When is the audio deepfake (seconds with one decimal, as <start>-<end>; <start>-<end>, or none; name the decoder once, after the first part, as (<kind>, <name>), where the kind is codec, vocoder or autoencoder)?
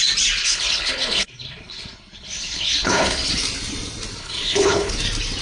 0.4-3.3 (codec, HILCodec); 4.2-4.9